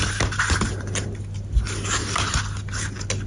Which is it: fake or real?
real